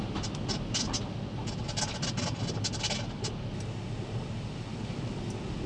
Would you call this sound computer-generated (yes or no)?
no